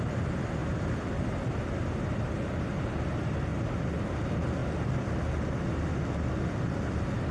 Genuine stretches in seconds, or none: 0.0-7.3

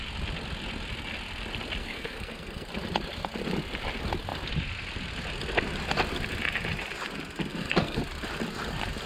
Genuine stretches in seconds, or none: 0.0-1.8; 2.7-7.5; 8.0-9.1